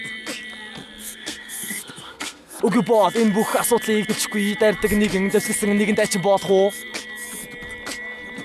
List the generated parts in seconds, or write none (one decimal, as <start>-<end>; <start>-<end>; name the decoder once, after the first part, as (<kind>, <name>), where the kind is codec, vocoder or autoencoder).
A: 1.0-2.6 (codec, SNAC)